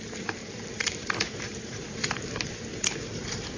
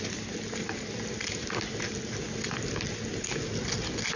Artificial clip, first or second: first